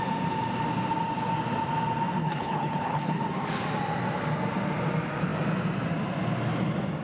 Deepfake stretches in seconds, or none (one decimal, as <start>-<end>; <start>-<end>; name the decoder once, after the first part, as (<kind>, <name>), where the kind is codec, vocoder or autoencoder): 2.2-3.2 (codec, HILCodec)